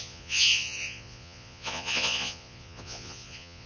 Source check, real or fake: fake